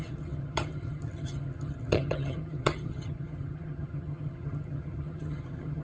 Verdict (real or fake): fake